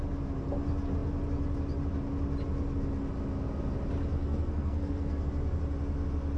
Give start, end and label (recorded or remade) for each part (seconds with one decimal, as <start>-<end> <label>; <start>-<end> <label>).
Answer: 0.0-4.2 recorded; 4.2-5.3 remade; 5.3-6.4 recorded